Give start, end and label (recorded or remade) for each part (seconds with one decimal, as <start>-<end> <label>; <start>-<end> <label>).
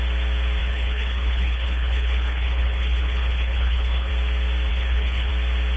0.0-0.6 recorded; 0.6-4.1 remade; 4.1-4.7 recorded; 4.7-5.3 remade; 5.3-5.8 recorded